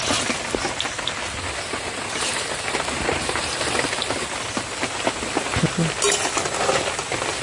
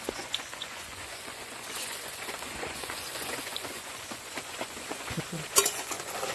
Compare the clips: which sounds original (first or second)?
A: first